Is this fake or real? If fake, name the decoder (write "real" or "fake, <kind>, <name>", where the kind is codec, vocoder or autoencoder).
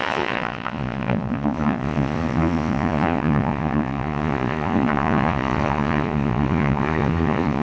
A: fake, vocoder, Vocos